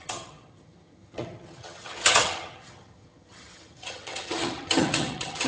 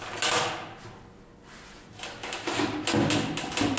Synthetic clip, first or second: first